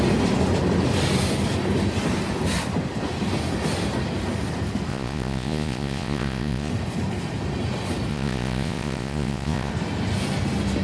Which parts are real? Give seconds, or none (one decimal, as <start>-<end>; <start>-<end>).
0.0-4.9; 6.7-8.1; 9.7-10.8